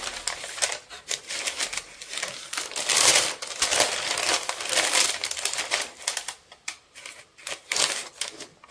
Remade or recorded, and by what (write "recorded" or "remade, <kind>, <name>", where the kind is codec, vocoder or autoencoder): recorded